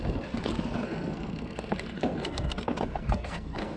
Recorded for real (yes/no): no